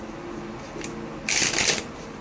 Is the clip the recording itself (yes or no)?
yes